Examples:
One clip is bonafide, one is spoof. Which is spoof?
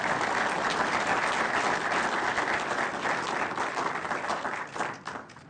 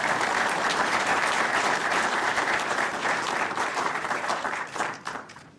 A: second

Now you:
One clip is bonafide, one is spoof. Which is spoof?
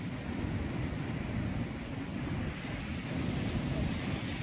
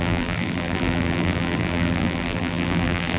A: second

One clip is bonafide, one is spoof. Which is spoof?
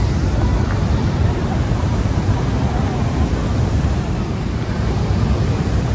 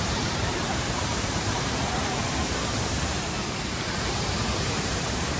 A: second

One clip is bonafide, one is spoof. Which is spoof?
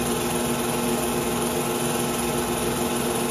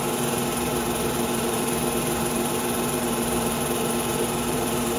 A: second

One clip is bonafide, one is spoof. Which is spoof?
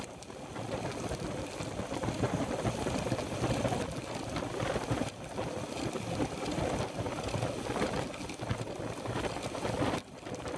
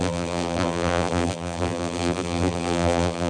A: second